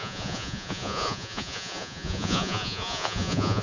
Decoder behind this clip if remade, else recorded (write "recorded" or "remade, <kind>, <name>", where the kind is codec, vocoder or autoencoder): remade, vocoder, Vocos